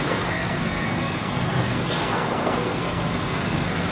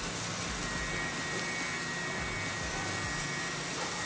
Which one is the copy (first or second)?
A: first